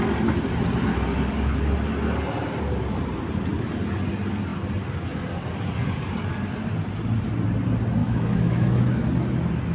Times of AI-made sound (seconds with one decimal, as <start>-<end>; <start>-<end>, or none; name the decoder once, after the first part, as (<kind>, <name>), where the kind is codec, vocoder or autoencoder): 8.0-9.0 (autoencoder, DAC-VAE)